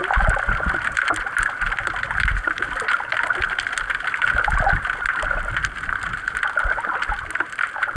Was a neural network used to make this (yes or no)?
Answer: no